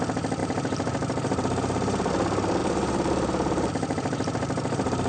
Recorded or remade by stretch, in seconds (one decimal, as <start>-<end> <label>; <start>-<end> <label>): 0.0-0.4 recorded; 0.4-2.1 remade; 2.1-2.6 recorded; 2.6-5.1 remade